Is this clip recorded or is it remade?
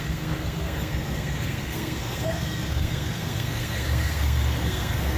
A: remade